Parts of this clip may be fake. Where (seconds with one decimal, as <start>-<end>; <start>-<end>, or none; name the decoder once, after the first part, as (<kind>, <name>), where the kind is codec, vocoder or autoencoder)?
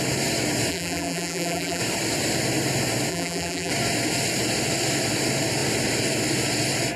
0.7-1.8 (vocoder, BigVGAN v2); 3.1-3.7